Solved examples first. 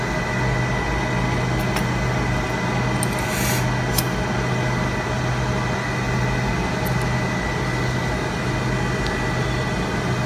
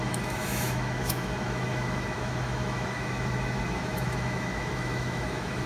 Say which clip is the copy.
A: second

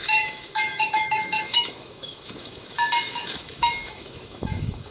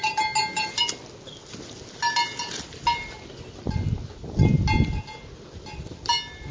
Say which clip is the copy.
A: first